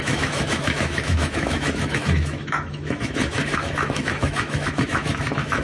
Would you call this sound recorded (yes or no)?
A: no